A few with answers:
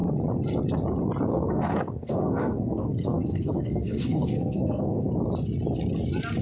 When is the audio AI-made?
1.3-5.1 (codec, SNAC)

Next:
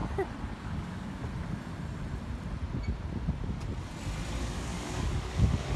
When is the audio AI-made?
0.6-1.2 (codec, DAC); 4.4-5.8

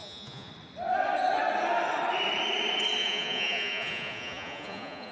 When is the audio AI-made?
0.0-0.5 (vocoder, Vocos); 3.0-5.1

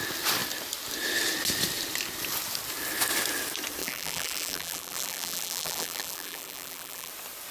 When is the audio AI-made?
3.8-7.1 (vocoder, BigVGAN v2)

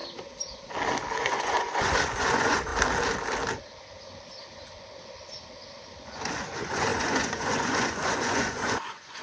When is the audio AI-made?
1.2-2.7 (vocoder, Vocos); 6.0-9.2

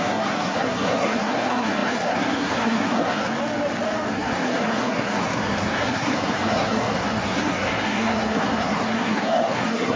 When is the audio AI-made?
0.0-3.3 (codec, SNAC); 4.1-10.0

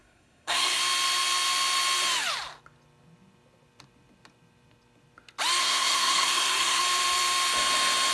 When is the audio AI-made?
0.0-0.8 (codec, SNAC); 5.6-6.8

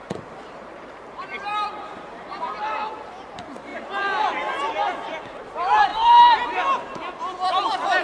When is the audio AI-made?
0.0-3.7 (vocoder, BigVGAN v2); 5.5-5.9; 7.5-8.0